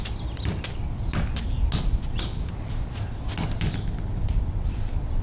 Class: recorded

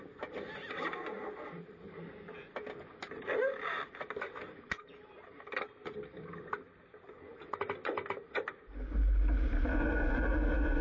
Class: recorded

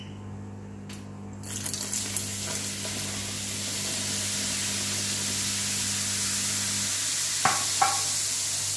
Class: recorded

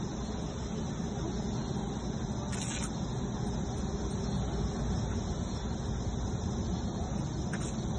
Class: recorded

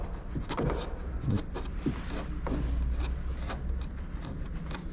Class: recorded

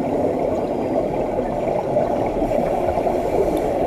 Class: remade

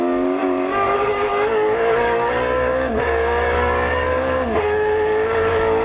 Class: remade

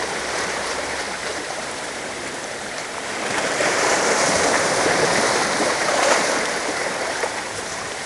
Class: remade